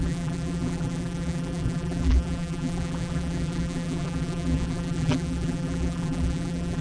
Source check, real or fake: fake